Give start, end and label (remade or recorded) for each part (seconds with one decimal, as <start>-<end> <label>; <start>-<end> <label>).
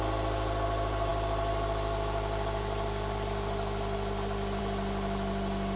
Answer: 0.0-5.8 recorded